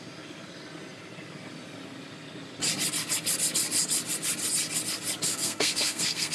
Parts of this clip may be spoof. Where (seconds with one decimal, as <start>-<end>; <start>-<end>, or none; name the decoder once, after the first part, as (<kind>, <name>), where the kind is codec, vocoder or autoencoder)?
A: 5.3-6.3 (codec, SNAC)